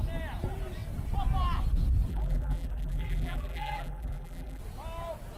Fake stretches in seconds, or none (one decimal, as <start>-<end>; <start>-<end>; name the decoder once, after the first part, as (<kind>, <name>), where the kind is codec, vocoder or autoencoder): 2.1-4.6 (vocoder, BigVGAN v2)